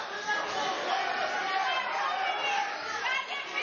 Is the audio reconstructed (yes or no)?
no